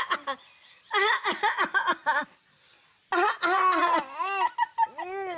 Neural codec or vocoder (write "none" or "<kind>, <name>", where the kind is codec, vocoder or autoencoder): none